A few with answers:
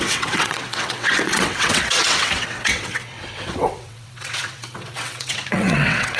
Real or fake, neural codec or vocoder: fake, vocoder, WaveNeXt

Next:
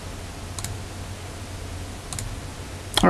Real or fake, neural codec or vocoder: real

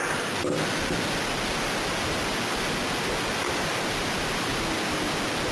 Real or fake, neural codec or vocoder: real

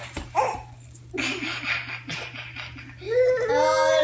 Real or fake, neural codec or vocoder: real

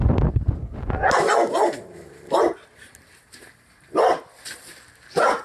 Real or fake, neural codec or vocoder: real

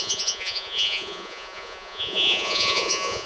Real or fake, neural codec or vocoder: fake, vocoder, Vocos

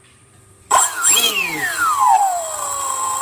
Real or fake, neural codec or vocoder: fake, vocoder, BigVGAN v2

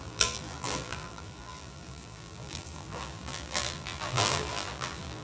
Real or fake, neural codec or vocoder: fake, vocoder, BigVGAN v2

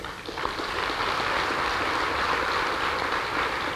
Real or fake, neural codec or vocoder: real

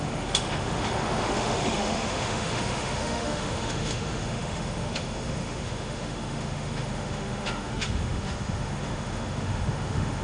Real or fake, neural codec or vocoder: fake, autoencoder, DAC-VAE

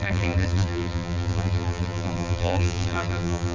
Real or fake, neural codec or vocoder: fake, vocoder, BigVGAN v2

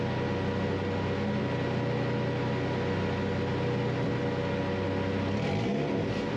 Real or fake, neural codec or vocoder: real